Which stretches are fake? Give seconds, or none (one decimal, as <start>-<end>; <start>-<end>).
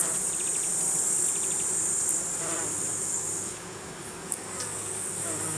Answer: 2.9-5.6